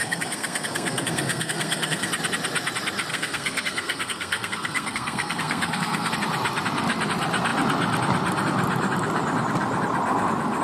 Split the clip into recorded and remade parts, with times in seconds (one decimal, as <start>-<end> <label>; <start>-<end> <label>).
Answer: 0.0-2.1 remade; 2.1-3.1 recorded; 3.1-6.1 remade; 6.1-10.6 recorded